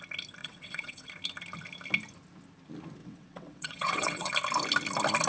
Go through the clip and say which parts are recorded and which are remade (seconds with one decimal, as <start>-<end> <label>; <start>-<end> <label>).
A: 0.0-0.4 recorded; 0.4-1.1 remade; 1.1-3.0 recorded; 3.0-4.3 remade; 4.3-5.3 recorded